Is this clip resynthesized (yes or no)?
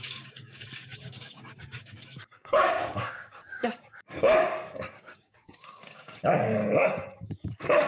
yes